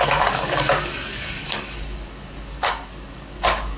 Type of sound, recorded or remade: remade